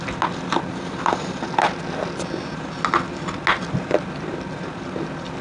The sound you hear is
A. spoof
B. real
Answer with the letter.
B